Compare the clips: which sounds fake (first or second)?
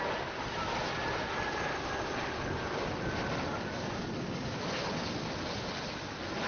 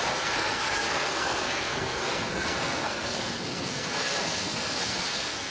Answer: second